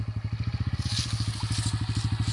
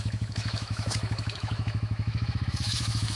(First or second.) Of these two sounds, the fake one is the second